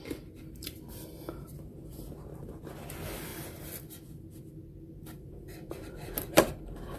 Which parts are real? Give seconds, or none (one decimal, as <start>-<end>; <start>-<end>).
3.3-5.7